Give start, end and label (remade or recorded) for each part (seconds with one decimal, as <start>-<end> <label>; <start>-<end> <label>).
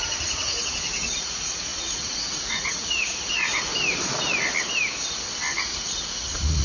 0.0-3.7 remade; 3.7-5.6 recorded; 5.6-6.6 remade